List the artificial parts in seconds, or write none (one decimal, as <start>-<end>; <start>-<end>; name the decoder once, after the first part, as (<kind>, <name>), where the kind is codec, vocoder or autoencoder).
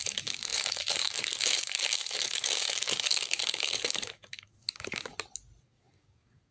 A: 0.0-5.1 (codec, DAC); 5.6-6.5